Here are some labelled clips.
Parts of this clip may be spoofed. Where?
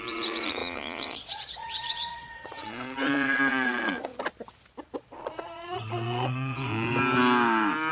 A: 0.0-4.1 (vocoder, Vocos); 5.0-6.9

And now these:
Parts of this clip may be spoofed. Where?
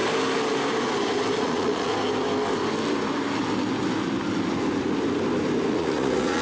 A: 1.4-1.9 (vocoder, Vocos); 5.7-6.4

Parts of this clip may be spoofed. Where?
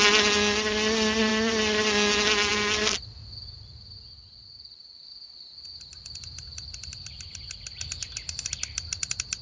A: none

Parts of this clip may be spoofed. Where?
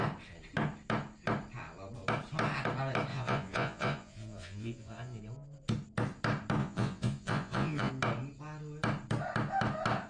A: 3.1-5.2 (vocoder, Vocos); 6.6-7.9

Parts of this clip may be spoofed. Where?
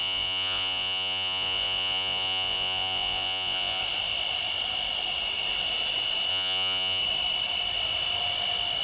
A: 0.0-3.8 (vocoder, Vocos); 6.3-7.0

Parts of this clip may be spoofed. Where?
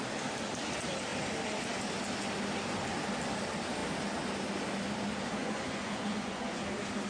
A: 5.4-6.6 (vocoder, Vocos)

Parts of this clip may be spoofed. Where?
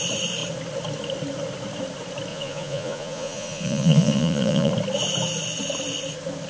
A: 2.3-4.7 (vocoder, Vocos)